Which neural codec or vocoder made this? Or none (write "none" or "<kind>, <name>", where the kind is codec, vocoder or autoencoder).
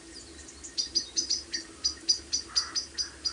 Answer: none